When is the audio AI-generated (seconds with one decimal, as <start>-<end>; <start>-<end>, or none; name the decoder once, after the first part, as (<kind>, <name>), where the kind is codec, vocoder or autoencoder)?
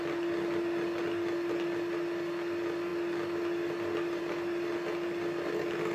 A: none